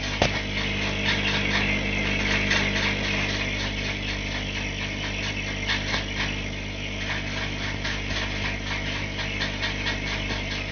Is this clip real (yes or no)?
yes